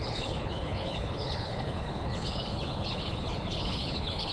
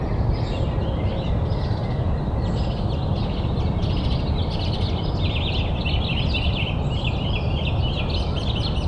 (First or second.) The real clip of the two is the second